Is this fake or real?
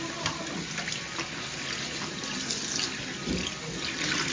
real